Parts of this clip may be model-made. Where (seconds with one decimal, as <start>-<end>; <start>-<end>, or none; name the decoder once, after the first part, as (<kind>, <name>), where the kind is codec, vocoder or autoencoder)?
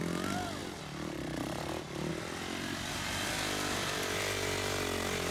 none